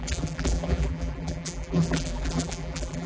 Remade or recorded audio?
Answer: remade